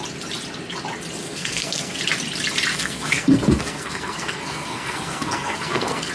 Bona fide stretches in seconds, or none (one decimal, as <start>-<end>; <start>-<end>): 0.0-1.2; 2.0-2.7